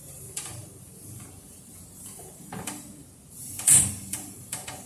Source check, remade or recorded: remade